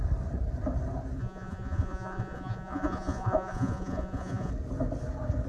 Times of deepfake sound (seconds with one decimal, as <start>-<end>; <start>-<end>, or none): 1.2-4.5